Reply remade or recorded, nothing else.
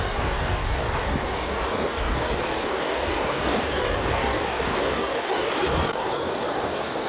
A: remade